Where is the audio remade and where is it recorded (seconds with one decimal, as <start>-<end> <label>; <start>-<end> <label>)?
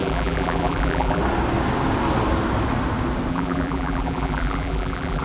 0.0-1.2 remade; 1.2-3.3 recorded; 3.3-5.2 remade